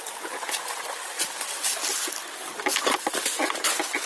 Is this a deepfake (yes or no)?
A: no